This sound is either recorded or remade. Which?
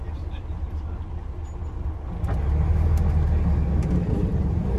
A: recorded